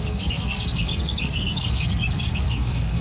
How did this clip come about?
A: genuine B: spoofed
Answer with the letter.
B